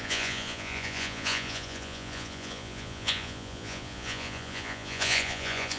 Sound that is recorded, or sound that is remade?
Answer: remade